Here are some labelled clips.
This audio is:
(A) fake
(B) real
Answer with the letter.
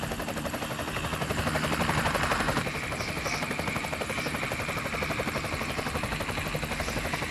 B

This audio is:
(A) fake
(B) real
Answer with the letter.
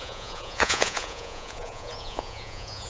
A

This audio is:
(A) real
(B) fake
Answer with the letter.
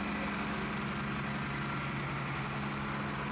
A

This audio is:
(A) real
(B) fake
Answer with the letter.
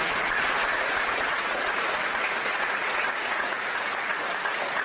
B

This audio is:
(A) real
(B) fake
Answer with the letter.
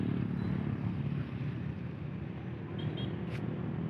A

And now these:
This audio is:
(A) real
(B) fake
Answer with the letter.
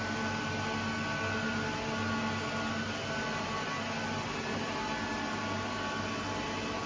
A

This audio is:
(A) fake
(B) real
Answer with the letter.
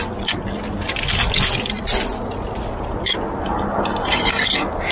B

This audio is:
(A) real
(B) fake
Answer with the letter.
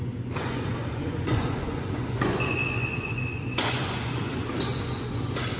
B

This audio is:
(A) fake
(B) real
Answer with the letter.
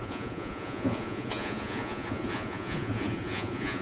A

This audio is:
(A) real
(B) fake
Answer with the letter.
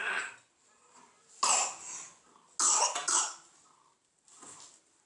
A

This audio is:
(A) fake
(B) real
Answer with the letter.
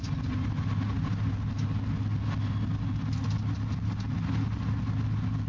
B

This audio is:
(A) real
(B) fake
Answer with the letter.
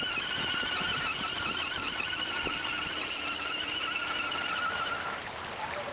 A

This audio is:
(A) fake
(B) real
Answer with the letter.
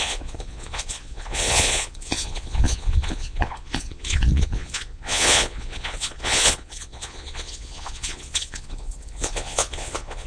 A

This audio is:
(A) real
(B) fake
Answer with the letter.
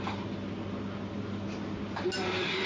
A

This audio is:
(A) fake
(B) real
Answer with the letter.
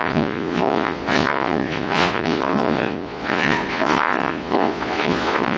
A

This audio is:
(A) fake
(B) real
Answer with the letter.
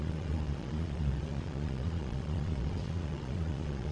A